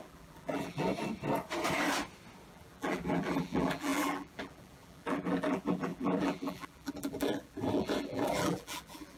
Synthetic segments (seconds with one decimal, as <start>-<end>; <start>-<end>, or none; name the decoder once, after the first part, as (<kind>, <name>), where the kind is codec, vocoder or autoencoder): 0.0-0.9 (vocoder, BigVGAN v2); 2.5-9.2